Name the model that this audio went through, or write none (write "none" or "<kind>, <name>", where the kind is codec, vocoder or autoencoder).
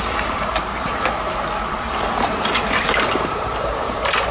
vocoder, BigVGAN v2